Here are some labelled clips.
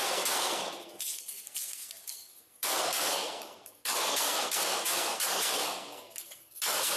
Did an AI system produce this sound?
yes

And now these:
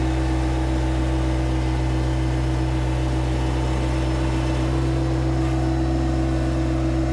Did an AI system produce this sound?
no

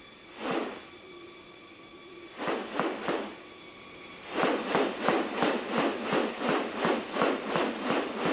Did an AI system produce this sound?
no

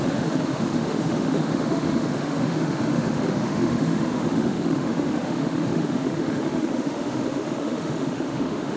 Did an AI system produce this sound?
yes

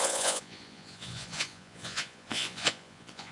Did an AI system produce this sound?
yes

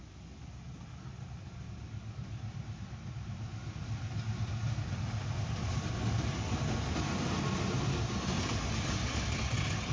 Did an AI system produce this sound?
no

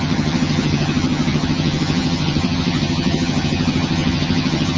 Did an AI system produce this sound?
yes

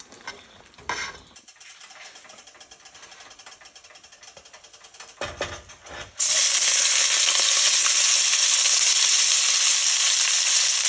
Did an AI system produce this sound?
no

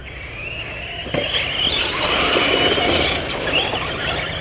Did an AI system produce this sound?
no